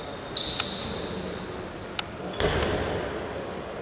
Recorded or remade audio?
recorded